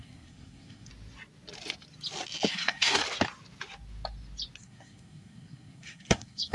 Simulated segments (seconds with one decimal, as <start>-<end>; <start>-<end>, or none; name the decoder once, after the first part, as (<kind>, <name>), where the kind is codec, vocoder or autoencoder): 0.0-0.9 (codec, SNAC); 2.5-3.0; 4.6-6.5